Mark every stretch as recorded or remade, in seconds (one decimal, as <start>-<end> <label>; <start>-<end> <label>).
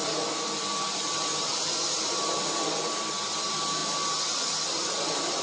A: 0.0-5.4 recorded